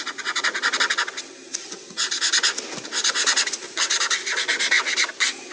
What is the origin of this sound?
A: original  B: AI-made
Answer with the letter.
A